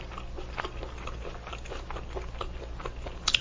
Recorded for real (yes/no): yes